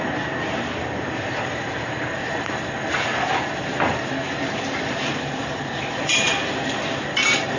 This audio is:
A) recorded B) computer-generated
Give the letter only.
B